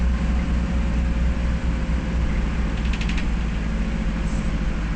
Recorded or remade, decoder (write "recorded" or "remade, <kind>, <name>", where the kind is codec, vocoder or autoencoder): recorded